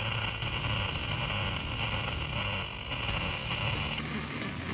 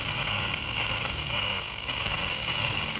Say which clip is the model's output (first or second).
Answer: second